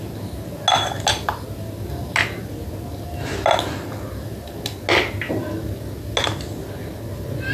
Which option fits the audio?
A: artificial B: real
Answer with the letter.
B